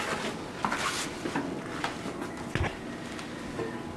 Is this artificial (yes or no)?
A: no